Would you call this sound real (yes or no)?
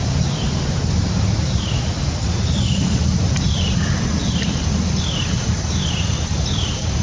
yes